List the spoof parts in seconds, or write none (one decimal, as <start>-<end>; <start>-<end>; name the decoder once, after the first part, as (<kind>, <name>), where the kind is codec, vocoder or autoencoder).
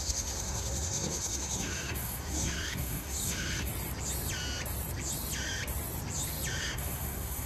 0.0-3.7 (codec, SNAC); 6.6-7.5